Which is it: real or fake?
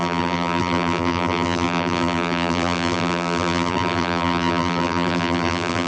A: fake